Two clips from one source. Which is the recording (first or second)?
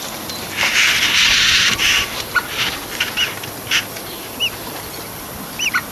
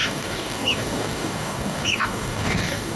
first